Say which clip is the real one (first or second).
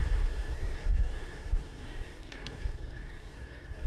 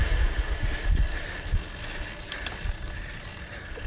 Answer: second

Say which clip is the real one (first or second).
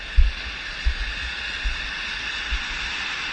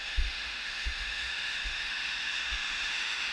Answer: first